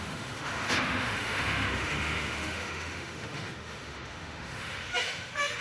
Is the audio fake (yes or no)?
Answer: yes